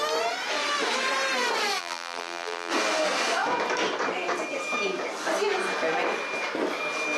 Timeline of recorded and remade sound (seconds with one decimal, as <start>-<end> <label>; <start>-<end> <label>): 0.0-1.8 recorded; 1.8-2.7 remade; 2.7-7.2 recorded

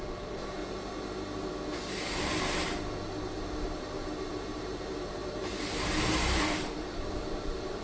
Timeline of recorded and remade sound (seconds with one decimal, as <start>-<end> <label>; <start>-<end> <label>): 0.0-0.6 remade; 0.6-3.4 recorded; 3.4-7.8 remade

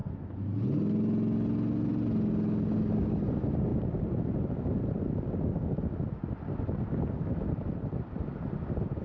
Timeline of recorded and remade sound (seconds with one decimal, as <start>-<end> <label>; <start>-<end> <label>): 0.0-3.7 recorded; 3.7-5.3 remade; 5.3-9.0 recorded

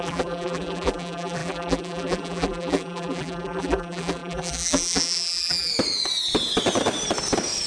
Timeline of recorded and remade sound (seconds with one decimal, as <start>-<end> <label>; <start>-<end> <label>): 0.0-5.7 remade; 5.7-7.7 recorded

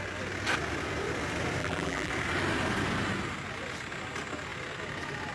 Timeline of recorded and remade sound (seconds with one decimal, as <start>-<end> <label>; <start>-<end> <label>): 0.0-1.6 recorded; 1.6-2.1 remade; 2.1-5.3 recorded

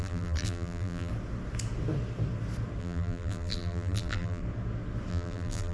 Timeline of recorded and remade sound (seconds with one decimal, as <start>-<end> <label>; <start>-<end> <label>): 0.0-1.1 remade; 1.1-2.8 recorded; 2.8-4.4 remade; 4.4-5.1 recorded; 5.1-5.7 remade

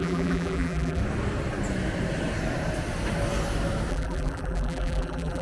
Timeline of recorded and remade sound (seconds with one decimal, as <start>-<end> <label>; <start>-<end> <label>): 0.0-1.0 remade; 1.0-3.9 recorded; 3.9-5.4 remade

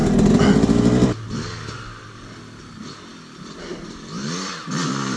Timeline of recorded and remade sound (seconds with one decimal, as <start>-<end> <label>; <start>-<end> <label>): 0.0-2.0 recorded; 2.0-5.2 remade